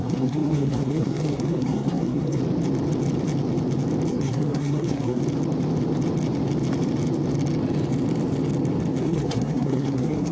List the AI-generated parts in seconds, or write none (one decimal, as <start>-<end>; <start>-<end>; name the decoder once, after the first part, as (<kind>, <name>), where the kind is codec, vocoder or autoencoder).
0.0-2.4 (codec, SNAC); 4.1-5.2; 9.0-10.3